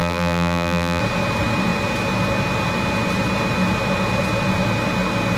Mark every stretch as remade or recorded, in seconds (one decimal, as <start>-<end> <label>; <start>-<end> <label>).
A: 0.0-1.0 remade; 1.0-5.4 recorded